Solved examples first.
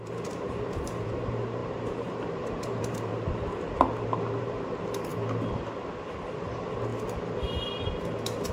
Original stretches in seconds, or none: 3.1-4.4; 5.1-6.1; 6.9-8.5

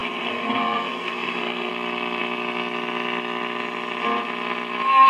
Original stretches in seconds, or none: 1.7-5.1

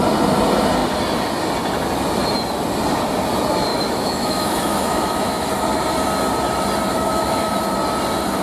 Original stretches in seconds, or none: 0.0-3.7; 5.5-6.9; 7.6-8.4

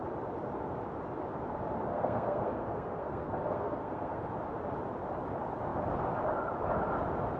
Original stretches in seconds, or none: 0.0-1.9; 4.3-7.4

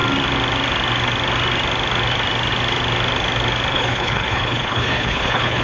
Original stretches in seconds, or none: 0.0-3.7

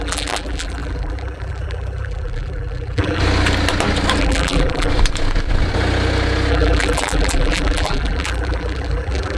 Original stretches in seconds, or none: 3.2-4.2; 4.9-6.5

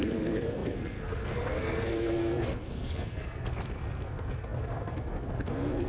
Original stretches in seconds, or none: none